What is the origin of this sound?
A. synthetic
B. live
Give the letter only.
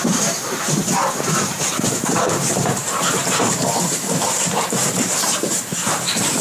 A